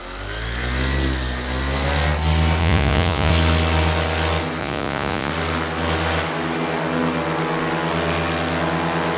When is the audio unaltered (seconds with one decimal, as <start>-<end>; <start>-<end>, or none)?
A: 0.0-2.6; 3.3-4.6; 5.3-9.2